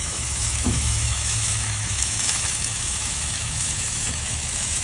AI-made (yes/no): yes